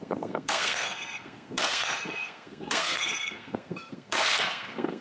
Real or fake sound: fake